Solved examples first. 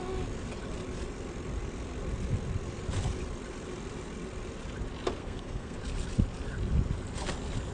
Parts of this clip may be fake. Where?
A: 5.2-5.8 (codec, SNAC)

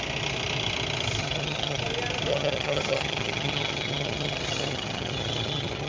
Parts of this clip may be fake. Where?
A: 1.2-1.8 (vocoder, HiFi-GAN); 2.3-5.9